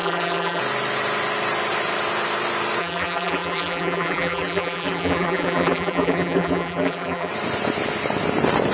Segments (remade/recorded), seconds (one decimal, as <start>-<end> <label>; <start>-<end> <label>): 0.0-0.6 remade; 0.6-2.8 recorded; 2.8-7.3 remade; 7.3-8.7 recorded